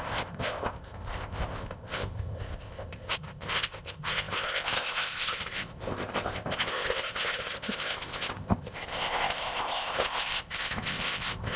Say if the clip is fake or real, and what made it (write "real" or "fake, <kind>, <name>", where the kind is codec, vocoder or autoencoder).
fake, codec, ZipCodec